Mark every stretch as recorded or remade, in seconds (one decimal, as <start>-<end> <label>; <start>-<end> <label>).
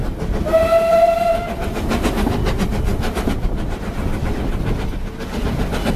0.0-6.0 recorded